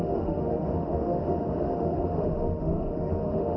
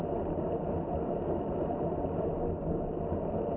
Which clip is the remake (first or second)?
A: first